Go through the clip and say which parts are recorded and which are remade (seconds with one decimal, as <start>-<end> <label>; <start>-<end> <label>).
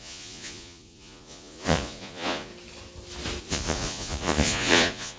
0.0-2.5 remade; 2.5-3.4 recorded; 3.4-5.2 remade